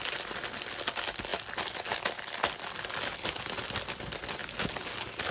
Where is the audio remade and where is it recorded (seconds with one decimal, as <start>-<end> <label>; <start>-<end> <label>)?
0.0-5.3 recorded